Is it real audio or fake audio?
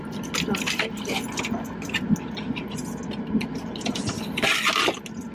real